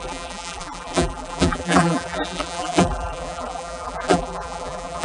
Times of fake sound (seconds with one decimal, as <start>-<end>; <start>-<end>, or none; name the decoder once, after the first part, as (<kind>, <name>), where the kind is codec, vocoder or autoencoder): 0.0-5.0 (vocoder, BigVGAN v2)